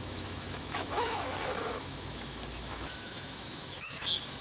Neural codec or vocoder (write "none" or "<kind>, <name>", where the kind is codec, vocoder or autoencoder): autoencoder, DAC-VAE